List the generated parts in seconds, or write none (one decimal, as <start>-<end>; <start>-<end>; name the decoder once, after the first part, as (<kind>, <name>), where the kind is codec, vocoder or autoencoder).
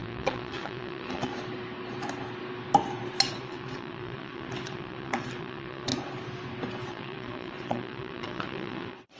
0.0-1.3 (vocoder, WaveNeXt); 3.3-5.9; 6.8-9.2